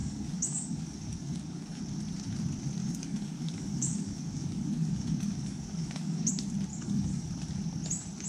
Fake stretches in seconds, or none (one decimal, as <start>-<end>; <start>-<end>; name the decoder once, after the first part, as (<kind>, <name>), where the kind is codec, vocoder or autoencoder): 0.0-1.8 (codec, DAC); 2.8-6.3; 6.7-7.3